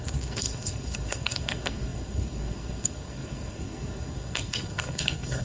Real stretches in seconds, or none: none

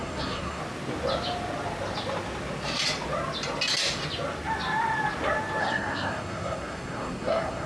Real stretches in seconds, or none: 0.6-5.6